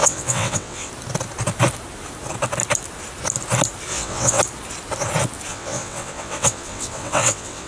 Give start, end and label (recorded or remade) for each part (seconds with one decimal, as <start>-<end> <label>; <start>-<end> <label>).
0.0-0.9 remade; 0.9-3.9 recorded; 3.9-4.4 remade; 4.4-5.5 recorded; 5.5-7.7 remade